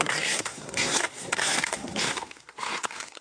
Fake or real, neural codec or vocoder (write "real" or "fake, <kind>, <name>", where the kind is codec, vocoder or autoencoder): fake, codec, SNAC